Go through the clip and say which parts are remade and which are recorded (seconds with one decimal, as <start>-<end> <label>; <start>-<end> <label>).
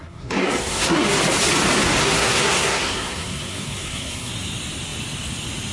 0.0-1.2 remade; 1.2-2.0 recorded; 2.0-4.3 remade; 4.3-5.7 recorded